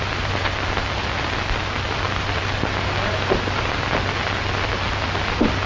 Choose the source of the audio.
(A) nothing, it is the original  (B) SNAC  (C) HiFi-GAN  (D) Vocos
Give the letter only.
A